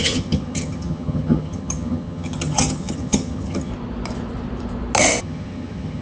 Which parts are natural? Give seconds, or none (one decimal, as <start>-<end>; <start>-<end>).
3.7-5.2